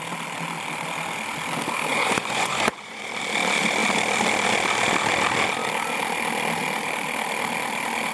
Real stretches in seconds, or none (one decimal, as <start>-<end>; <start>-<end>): 0.0-1.9; 3.1-8.1